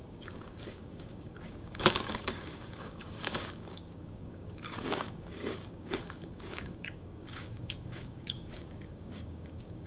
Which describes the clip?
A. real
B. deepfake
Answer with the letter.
B